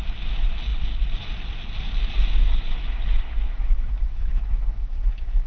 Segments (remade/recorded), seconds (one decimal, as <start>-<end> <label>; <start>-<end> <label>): 0.0-2.4 recorded; 2.4-5.5 remade